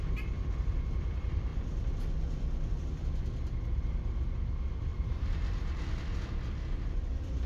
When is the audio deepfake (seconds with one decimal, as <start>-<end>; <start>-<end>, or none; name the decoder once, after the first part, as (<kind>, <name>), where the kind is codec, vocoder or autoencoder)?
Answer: 4.9-5.8 (vocoder, BigVGAN v2)